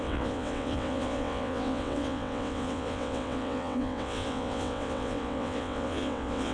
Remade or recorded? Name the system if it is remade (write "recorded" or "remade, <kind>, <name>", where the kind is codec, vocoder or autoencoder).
remade, vocoder, WaveNeXt